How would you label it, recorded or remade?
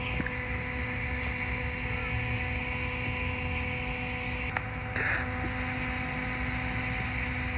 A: recorded